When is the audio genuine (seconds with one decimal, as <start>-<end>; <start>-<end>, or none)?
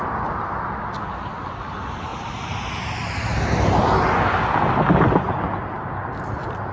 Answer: 0.0-6.7